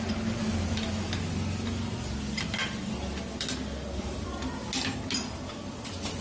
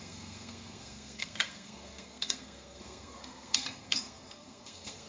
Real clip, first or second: first